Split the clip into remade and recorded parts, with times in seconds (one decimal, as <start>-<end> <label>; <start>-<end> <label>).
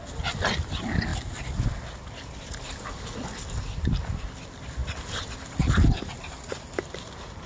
0.0-4.8 recorded; 4.8-5.9 remade; 5.9-7.5 recorded